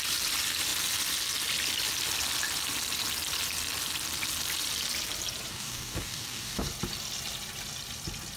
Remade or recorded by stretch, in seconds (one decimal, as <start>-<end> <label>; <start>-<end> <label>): 0.0-5.5 recorded; 5.5-6.7 remade; 6.7-8.4 recorded